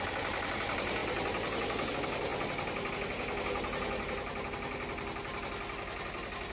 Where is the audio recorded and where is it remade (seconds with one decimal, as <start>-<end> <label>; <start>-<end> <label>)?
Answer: 0.0-6.5 recorded